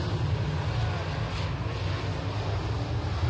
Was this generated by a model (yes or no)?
no